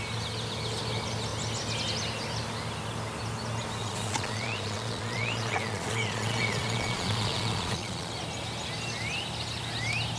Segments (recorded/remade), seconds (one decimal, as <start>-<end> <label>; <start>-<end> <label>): 0.0-3.8 recorded; 3.8-8.1 remade; 8.1-10.2 recorded